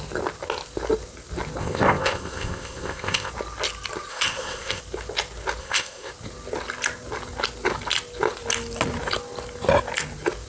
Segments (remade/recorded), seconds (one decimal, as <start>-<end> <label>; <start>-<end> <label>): 0.0-1.6 recorded; 1.6-3.3 remade; 3.3-4.1 recorded; 4.1-4.8 remade; 4.8-5.6 recorded; 5.6-6.1 remade; 6.1-10.5 recorded